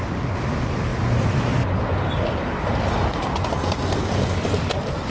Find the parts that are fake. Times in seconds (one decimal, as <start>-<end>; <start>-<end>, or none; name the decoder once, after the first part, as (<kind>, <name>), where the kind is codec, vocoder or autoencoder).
none